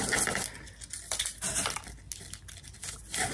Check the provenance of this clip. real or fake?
real